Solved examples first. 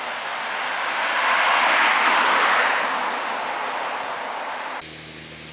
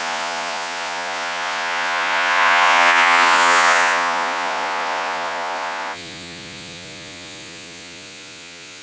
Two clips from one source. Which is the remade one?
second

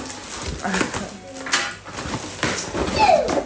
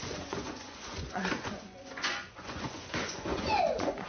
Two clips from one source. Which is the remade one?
second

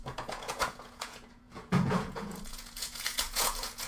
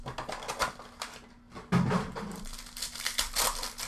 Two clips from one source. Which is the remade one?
first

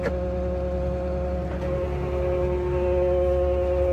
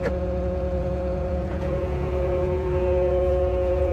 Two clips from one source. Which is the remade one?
second